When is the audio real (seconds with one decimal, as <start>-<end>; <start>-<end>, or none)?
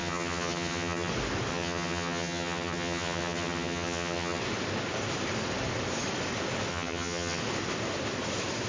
1.1-1.5; 4.4-6.7; 7.4-8.7